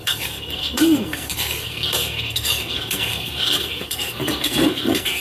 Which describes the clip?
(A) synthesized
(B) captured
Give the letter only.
A